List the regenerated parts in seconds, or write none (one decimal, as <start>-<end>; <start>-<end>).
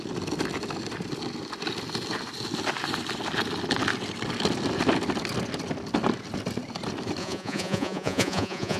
7.2-8.8